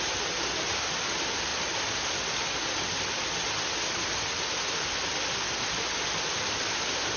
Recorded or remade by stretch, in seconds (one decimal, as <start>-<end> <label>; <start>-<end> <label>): 0.0-7.2 recorded

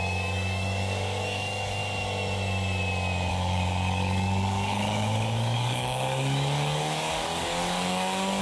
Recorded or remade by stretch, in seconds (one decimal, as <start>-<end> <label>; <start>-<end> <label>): 0.0-1.8 remade; 1.8-3.3 recorded; 3.3-8.4 remade

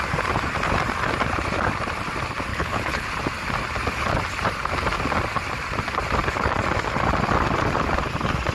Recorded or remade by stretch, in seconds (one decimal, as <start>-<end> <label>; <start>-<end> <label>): 0.0-2.5 recorded; 2.5-3.1 remade; 3.1-8.5 recorded